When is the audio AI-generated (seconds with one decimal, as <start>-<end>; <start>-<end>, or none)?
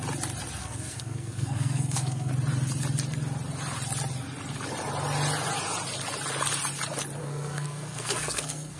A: 0.6-2.3; 7.2-8.8